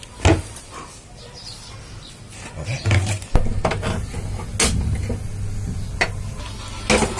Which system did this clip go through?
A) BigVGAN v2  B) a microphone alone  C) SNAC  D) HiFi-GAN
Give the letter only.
B